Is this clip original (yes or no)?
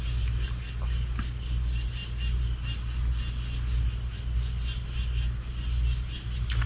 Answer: yes